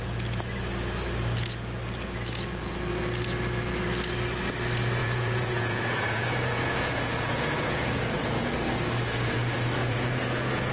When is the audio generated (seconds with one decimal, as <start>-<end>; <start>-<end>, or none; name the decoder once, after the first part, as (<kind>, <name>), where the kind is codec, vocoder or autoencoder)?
5.0-8.5 (vocoder, Vocos); 9.8-10.7